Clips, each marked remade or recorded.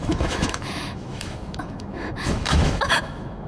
remade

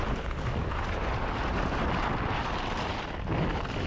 recorded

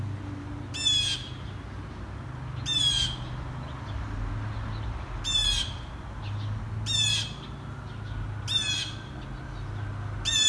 recorded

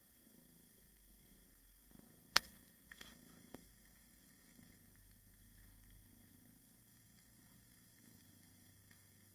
remade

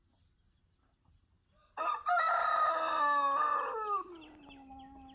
recorded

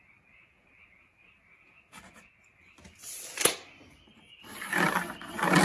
recorded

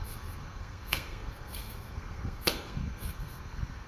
remade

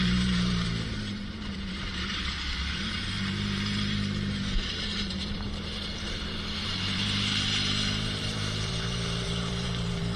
remade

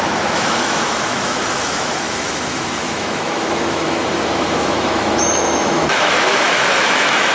remade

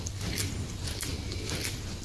recorded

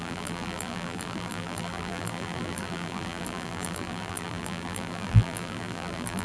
remade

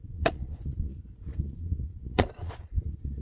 remade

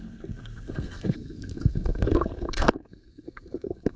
remade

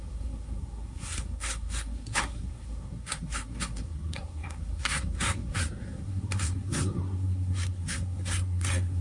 remade